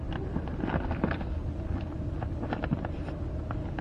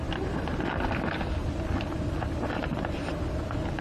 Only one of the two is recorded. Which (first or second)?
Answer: first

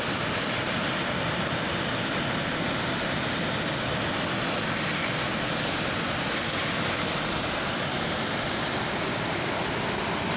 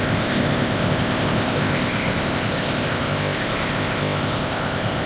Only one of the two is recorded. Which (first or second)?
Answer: first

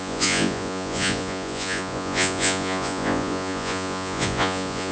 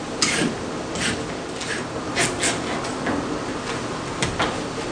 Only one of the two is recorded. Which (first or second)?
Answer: second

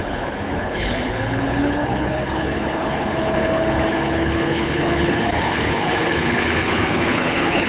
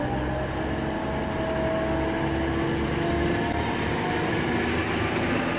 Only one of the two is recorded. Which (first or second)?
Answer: second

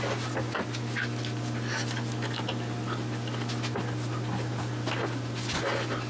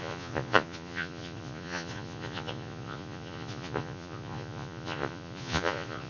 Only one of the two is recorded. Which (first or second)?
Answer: first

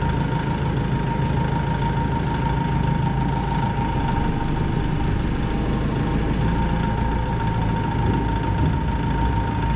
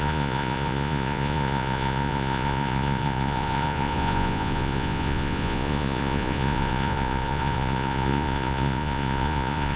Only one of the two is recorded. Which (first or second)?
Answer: first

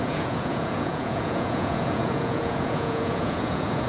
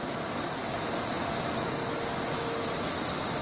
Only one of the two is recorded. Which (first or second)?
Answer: second